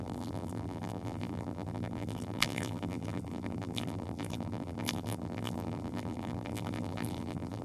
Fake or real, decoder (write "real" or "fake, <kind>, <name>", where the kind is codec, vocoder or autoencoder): fake, vocoder, BigVGAN v2